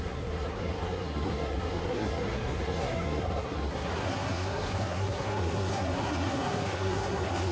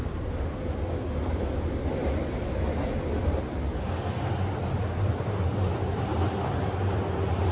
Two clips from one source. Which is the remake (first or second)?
first